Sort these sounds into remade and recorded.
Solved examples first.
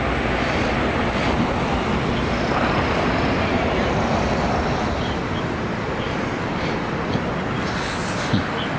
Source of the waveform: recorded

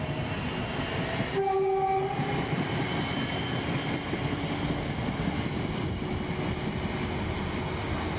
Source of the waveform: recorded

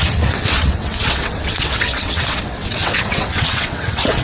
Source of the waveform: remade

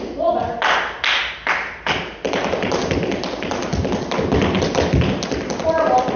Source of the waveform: recorded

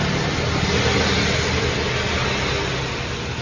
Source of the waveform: recorded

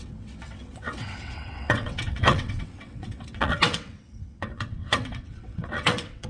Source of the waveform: remade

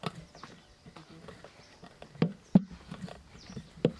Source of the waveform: recorded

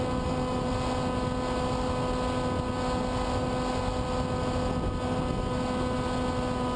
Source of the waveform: recorded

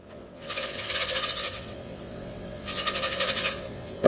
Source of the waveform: remade